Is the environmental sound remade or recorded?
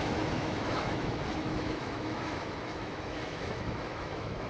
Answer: remade